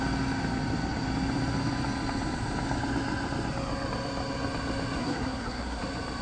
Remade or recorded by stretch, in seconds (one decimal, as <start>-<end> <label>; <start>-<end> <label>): 0.0-5.0 recorded; 5.0-5.8 remade; 5.8-6.2 recorded